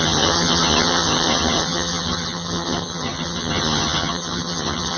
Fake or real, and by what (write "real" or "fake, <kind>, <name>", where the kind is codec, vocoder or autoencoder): fake, vocoder, HiFi-GAN